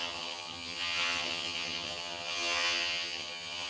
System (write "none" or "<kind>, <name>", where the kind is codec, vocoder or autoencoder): vocoder, HiFi-GAN